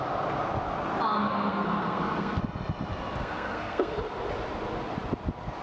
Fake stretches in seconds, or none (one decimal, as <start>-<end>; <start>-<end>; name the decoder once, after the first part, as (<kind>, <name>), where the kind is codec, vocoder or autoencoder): 1.2-2.4 (codec, SNAC); 3.2-4.0

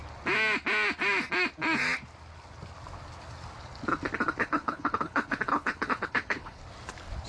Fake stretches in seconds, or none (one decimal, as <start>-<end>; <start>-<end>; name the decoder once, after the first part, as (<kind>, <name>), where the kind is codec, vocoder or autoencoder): 4.4-6.6 (codec, HILCodec)